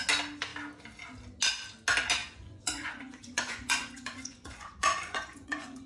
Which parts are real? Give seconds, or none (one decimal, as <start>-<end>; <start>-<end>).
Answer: 0.0-2.2